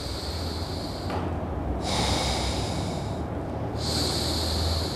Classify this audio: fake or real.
real